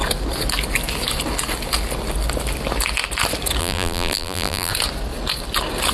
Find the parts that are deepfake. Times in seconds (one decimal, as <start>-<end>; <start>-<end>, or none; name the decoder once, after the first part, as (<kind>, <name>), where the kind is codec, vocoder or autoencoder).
3.6-4.7 (vocoder, BigVGAN v2)